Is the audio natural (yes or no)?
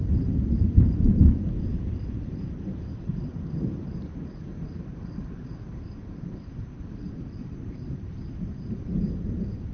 no